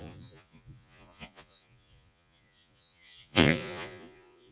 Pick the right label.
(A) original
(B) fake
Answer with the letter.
B